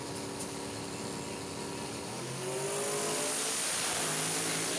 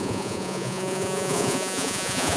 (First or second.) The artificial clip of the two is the second